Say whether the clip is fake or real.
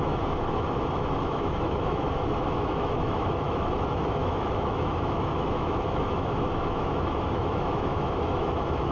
fake